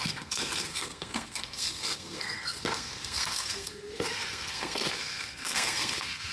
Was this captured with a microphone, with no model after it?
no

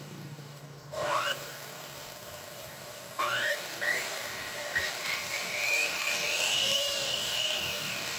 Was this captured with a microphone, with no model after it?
no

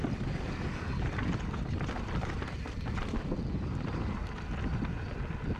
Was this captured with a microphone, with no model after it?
yes